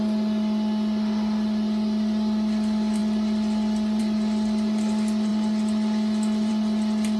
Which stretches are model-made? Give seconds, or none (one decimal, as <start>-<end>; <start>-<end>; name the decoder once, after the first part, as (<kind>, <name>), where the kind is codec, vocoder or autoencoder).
none